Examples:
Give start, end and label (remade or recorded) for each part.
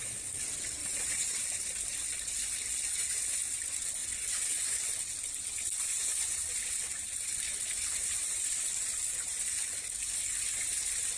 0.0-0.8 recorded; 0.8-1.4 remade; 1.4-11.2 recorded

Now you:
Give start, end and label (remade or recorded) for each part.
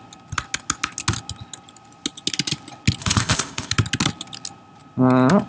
0.0-3.0 recorded; 3.0-3.7 remade; 3.7-5.5 recorded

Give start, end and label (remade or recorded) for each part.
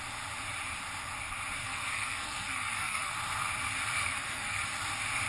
0.0-1.6 recorded; 1.6-3.1 remade; 3.1-4.0 recorded; 4.0-4.6 remade; 4.6-5.3 recorded